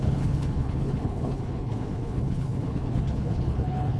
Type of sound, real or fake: fake